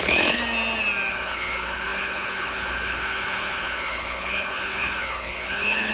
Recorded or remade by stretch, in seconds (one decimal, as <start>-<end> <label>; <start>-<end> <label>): 0.0-0.4 remade; 0.4-1.1 recorded; 1.1-5.9 remade